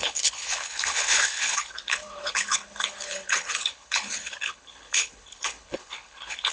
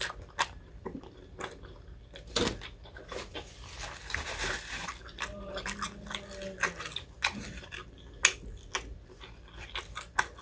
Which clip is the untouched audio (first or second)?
second